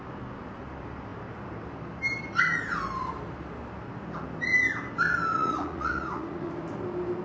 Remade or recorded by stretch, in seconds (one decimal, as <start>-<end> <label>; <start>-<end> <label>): 0.0-5.3 recorded; 5.3-6.5 remade; 6.5-7.2 recorded